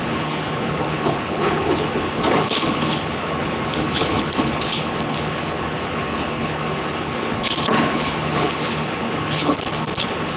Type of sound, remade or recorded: remade